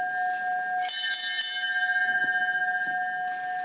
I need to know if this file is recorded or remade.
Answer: recorded